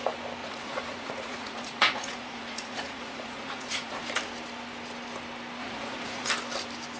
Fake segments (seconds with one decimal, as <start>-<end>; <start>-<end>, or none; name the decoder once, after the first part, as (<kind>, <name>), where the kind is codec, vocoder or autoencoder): 0.4-4.0 (vocoder, Vocos); 5.6-6.3